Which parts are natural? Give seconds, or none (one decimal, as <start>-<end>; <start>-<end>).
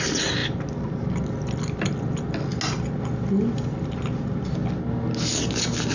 0.0-5.9